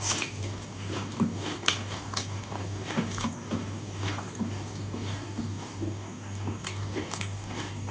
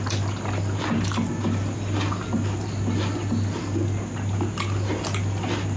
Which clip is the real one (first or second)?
second